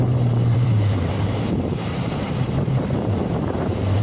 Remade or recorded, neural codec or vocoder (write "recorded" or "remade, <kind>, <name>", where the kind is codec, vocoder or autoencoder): remade, vocoder, BigVGAN v2